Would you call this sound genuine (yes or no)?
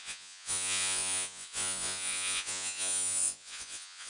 no